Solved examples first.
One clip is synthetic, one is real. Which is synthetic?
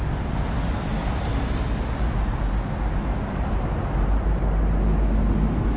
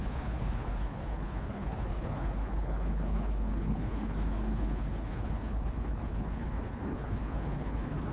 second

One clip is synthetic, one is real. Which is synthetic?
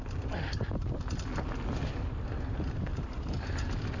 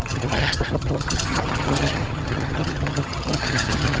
second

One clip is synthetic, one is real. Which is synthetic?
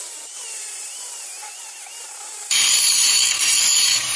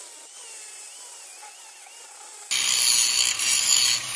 first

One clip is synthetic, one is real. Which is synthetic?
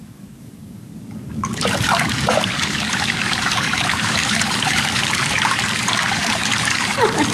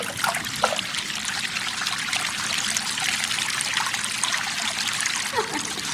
first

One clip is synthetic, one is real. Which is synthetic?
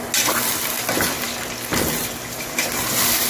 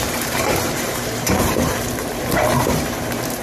second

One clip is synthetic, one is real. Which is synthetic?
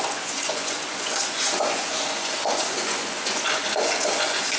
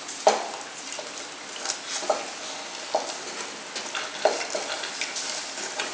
first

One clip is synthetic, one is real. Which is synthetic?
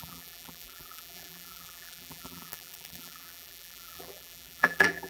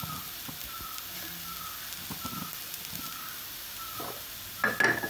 first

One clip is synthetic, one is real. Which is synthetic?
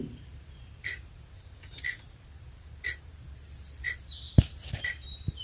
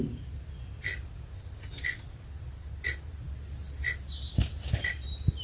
first